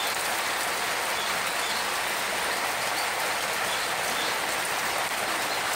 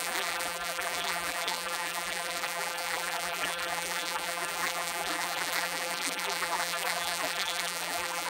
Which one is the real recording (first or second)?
first